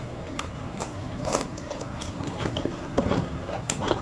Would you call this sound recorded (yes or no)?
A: no